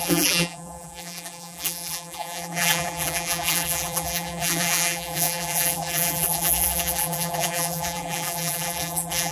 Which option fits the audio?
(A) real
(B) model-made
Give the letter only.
B